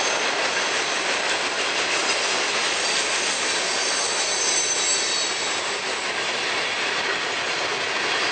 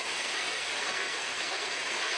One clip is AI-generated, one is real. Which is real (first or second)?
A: first